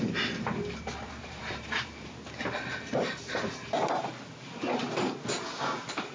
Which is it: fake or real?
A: fake